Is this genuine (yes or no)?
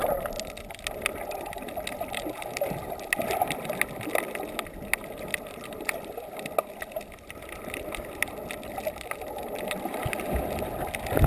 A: yes